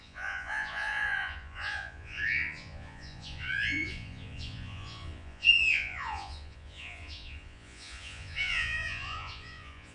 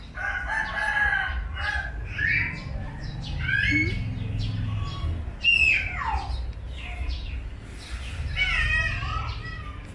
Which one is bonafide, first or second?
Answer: second